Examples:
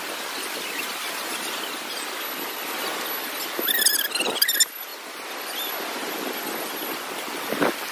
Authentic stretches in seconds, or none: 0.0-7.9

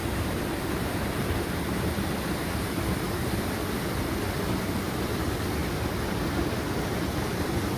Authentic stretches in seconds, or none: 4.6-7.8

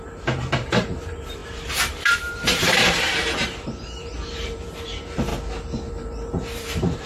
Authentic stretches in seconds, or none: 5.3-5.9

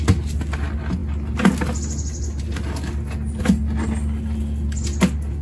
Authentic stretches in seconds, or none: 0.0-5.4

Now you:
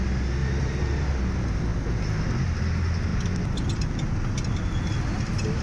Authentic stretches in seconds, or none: 0.0-0.4; 1.2-5.6